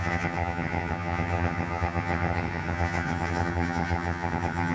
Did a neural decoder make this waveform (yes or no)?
yes